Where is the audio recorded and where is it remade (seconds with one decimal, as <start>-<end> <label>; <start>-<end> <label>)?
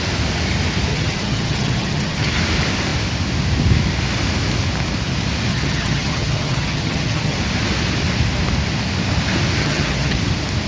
0.0-0.9 recorded; 0.9-2.3 remade; 2.3-5.5 recorded; 5.5-7.4 remade; 7.4-9.6 recorded; 9.6-10.2 remade; 10.2-10.7 recorded